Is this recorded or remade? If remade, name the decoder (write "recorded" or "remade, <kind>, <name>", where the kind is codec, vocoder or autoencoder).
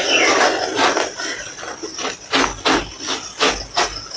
recorded